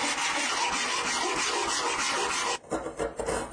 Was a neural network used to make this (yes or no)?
no